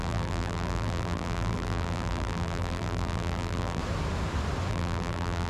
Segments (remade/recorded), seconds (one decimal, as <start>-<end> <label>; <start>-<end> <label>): 0.0-3.8 remade; 3.8-4.7 recorded; 4.7-5.5 remade